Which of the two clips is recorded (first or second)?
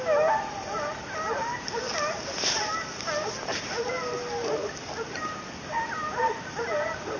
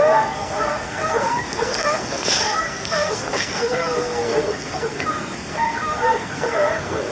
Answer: first